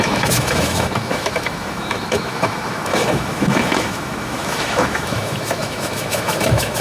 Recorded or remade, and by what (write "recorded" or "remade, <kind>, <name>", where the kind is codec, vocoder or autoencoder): remade, autoencoder, DAC-VAE